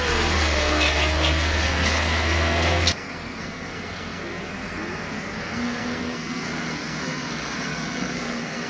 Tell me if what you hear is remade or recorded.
remade